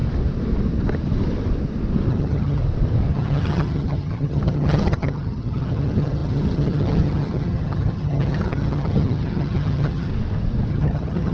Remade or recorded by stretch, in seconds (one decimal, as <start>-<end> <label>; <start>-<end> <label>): 0.0-2.1 recorded; 2.1-2.6 remade; 2.6-3.1 recorded; 3.1-10.1 remade; 10.1-10.7 recorded; 10.7-11.3 remade